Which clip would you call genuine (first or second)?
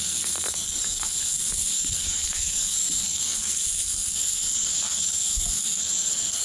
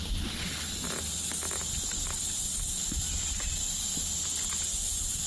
second